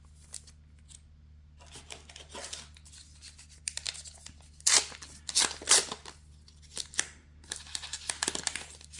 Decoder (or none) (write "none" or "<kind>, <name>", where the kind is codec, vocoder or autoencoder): none